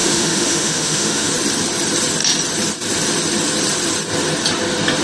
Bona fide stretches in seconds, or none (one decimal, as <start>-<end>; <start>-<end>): 1.3-5.0